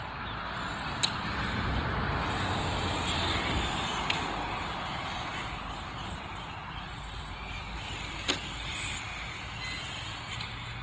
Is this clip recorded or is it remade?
recorded